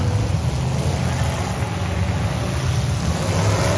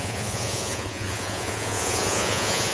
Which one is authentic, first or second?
first